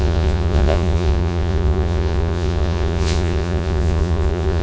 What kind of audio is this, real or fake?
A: fake